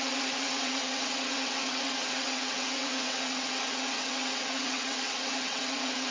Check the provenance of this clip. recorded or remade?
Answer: remade